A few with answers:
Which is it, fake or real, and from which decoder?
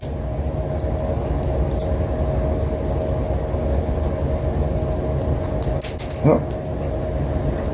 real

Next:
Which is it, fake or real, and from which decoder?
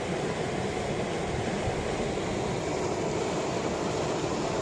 real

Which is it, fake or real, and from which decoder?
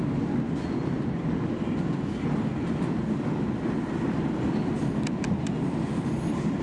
real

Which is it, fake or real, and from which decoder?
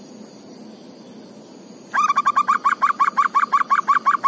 real